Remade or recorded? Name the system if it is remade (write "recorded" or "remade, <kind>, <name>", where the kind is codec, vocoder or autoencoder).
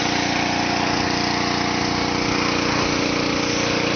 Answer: recorded